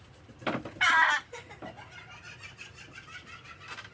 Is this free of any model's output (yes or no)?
yes